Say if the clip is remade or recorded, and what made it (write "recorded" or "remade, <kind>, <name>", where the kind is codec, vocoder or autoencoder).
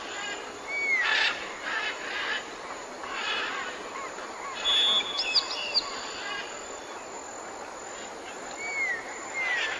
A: recorded